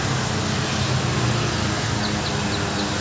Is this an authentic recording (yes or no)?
yes